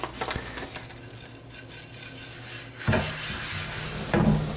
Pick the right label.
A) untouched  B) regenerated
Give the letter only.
A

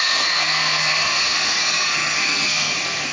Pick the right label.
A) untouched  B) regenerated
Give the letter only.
B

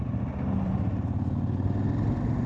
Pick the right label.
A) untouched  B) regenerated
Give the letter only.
A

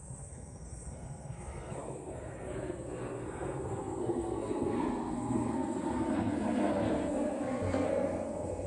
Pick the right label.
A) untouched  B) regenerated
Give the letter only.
B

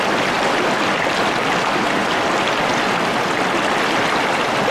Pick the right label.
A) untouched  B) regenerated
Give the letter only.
A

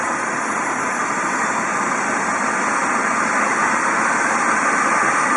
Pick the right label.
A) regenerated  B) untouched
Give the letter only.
B